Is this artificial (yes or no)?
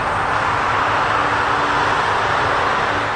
no